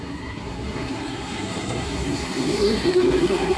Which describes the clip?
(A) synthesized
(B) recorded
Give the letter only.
A